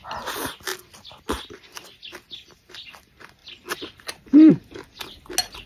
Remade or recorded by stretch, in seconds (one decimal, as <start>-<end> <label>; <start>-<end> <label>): 0.0-5.7 recorded